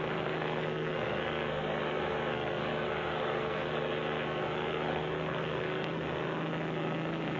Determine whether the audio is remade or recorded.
remade